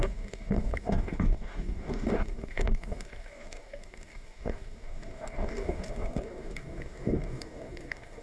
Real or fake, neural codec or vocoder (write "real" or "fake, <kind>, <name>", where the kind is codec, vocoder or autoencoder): fake, codec, DAC